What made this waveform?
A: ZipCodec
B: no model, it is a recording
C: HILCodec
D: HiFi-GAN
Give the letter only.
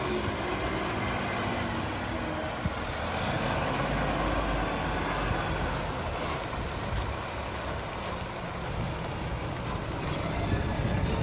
B